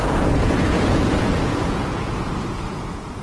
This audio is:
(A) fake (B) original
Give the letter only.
A